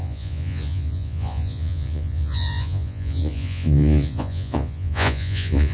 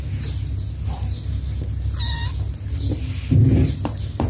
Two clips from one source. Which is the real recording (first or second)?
second